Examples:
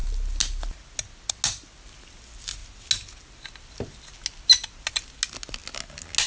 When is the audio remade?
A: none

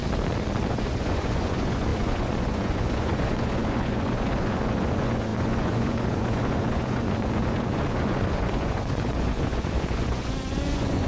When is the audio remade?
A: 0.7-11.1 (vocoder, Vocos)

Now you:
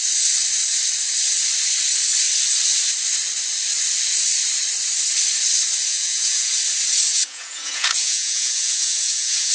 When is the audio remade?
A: 5.9-6.6 (vocoder, Vocos); 7.1-9.5

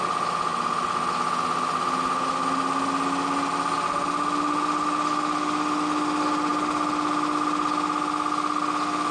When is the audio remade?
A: none

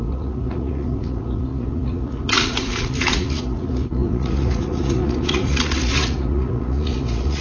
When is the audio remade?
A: 0.0-7.4 (vocoder, Vocos)

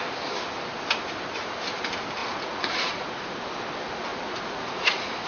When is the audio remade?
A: 2.2-3.4 (vocoder, Vocos); 4.1-5.3

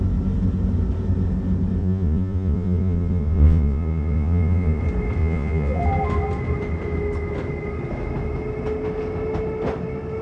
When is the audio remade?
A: 1.8-4.8 (vocoder, Vocos); 5.2-5.8